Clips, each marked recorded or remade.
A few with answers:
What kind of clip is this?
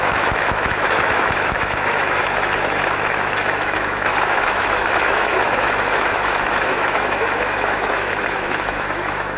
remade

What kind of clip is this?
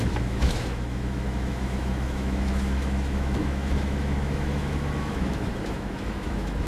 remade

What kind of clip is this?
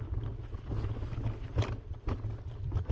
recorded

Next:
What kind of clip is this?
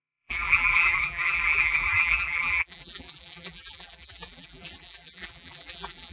remade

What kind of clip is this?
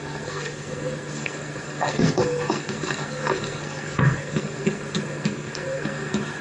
remade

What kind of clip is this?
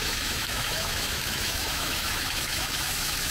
remade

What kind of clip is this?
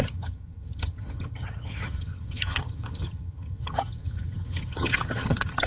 remade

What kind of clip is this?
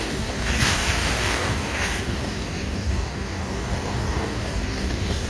remade